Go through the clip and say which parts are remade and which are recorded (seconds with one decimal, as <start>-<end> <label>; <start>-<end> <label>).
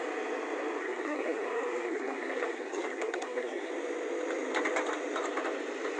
0.0-0.8 recorded; 0.8-3.7 remade; 3.7-6.0 recorded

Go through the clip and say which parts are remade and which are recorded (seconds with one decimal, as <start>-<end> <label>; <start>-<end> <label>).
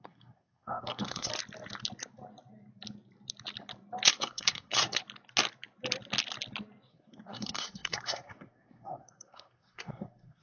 0.0-1.3 remade; 1.3-4.1 recorded; 4.1-5.0 remade; 5.0-6.9 recorded; 6.9-10.4 remade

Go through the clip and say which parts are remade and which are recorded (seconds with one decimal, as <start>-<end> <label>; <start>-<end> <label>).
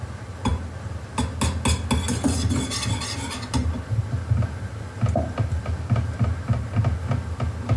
0.0-7.8 recorded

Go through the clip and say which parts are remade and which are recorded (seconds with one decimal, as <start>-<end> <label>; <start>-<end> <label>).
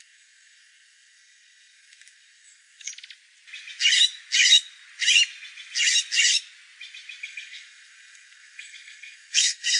0.0-2.9 remade; 2.9-7.2 recorded; 7.2-9.8 remade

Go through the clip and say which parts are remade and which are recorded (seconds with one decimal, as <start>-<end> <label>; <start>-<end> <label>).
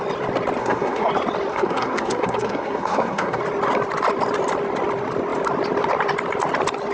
0.0-0.6 recorded; 0.6-1.1 remade; 1.1-1.5 recorded; 1.5-3.4 remade; 3.4-6.9 recorded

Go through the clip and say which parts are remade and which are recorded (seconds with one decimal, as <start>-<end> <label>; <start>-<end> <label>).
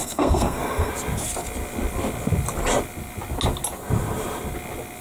0.0-0.9 remade; 0.9-5.0 recorded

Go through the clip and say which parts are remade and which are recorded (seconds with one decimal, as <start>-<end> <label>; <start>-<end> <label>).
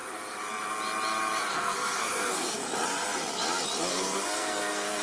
0.0-1.5 recorded; 1.5-2.6 remade; 2.6-3.9 recorded; 3.9-5.0 remade